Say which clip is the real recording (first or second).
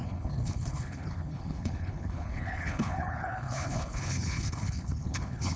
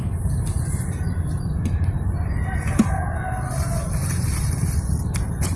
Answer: second